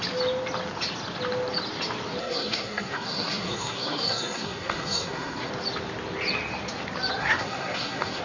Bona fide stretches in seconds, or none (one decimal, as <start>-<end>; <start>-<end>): 0.0-2.2; 5.5-7.2